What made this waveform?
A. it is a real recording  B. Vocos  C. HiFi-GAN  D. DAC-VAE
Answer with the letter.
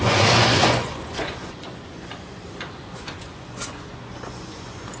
B